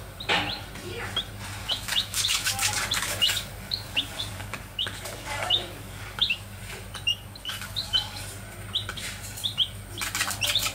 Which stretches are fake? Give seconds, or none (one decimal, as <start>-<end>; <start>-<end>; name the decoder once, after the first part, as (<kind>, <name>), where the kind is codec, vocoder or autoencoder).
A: 1.6-6.6 (codec, DAC); 7.1-8.2

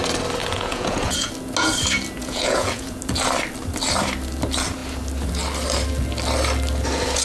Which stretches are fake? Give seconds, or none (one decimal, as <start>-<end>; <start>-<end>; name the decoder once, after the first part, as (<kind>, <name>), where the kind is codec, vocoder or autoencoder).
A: 0.4-1.3 (vocoder, Vocos); 2.2-3.0

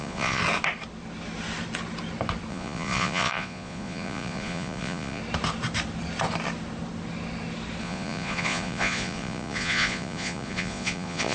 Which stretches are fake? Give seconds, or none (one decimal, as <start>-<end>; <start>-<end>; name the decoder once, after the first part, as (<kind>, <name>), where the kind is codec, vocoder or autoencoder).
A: 0.0-0.4 (vocoder, Vocos); 2.5-5.2; 7.8-11.3

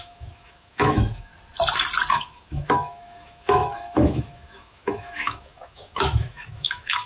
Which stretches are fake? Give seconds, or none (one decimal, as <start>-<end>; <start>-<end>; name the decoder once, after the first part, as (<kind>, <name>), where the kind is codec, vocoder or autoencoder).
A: 0.0-1.3 (autoencoder, DAC-VAE); 2.1-7.1